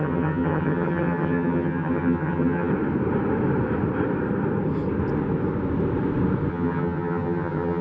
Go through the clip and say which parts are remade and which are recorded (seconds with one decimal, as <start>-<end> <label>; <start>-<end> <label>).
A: 0.0-2.7 remade; 2.7-6.5 recorded; 6.5-7.8 remade